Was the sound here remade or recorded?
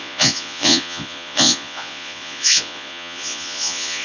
remade